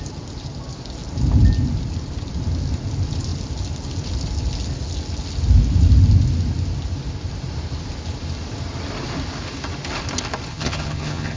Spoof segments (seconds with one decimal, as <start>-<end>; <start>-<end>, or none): 10.5-11.4